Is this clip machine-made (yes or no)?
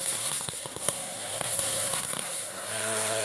yes